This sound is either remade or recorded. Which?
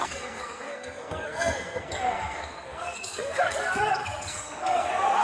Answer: remade